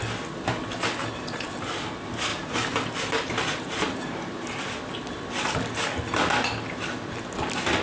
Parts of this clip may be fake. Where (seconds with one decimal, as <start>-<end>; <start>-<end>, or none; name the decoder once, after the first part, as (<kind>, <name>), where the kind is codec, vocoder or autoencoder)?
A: 2.3-4.6 (vocoder, BigVGAN v2)